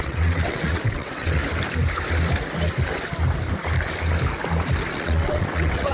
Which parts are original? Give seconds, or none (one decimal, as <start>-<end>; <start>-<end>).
1.4-4.9